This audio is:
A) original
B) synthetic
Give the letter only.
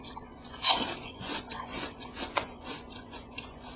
B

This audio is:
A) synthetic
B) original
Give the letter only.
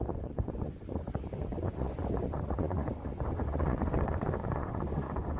A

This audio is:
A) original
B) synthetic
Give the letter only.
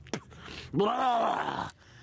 A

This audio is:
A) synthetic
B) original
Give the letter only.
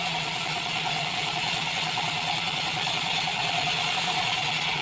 A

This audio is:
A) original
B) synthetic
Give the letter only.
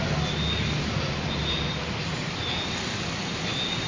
A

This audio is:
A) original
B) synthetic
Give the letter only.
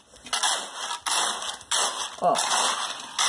A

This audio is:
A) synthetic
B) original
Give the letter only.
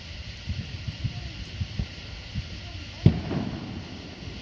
B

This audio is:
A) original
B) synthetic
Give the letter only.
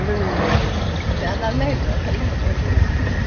A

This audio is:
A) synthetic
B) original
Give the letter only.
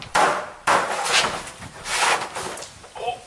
B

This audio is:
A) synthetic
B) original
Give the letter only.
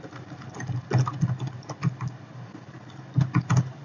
B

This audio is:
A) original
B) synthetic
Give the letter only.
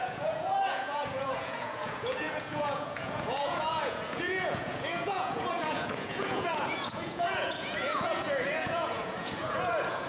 B